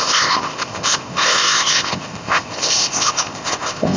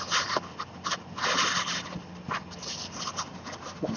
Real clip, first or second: second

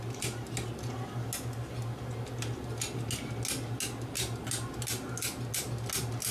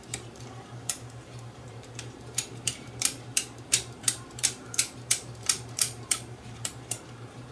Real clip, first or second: first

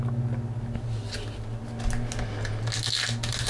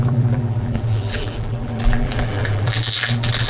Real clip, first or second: first